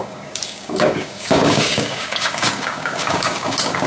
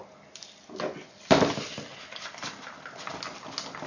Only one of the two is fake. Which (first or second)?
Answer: first